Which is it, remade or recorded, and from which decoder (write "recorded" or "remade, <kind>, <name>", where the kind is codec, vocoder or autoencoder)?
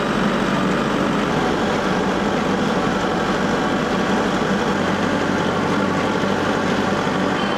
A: recorded